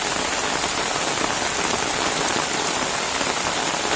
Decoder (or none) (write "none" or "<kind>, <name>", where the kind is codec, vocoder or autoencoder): none